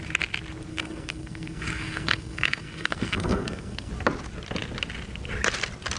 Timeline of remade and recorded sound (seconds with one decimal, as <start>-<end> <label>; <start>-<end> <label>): 0.0-0.7 recorded; 0.7-3.9 remade; 3.9-6.0 recorded